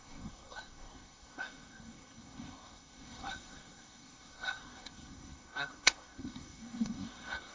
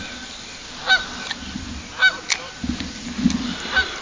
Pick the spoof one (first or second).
first